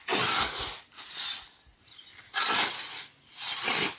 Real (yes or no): yes